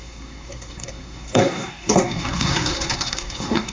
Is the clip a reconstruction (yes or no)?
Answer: yes